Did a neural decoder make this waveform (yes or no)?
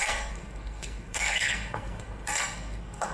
yes